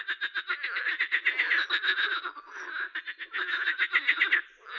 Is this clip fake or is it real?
real